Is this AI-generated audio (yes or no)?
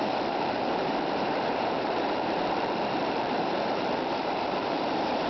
yes